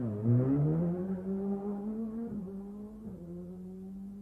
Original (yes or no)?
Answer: yes